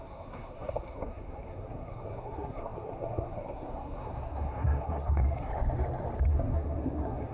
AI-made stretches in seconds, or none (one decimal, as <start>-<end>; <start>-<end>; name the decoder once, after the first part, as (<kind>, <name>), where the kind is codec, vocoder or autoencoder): 0.0-5.5 (codec, SNAC); 6.3-7.3